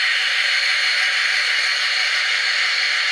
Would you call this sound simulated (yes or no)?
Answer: no